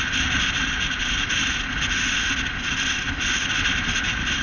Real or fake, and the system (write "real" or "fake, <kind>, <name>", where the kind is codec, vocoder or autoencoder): real